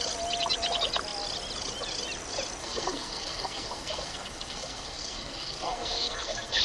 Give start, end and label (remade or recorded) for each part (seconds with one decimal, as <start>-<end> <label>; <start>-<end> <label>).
0.0-2.6 recorded; 2.6-6.6 remade